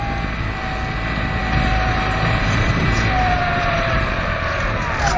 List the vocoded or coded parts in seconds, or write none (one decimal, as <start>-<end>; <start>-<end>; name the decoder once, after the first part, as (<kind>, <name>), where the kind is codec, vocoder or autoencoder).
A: 1.4-4.0 (vocoder, BigVGAN v2)